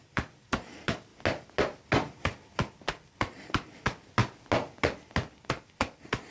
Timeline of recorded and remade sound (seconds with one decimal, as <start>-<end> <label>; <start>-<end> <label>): 0.0-1.1 remade; 1.1-2.8 recorded; 2.8-4.2 remade; 4.2-5.6 recorded; 5.6-6.3 remade